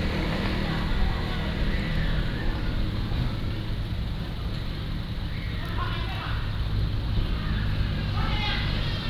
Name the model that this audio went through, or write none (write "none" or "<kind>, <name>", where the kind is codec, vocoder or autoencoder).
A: none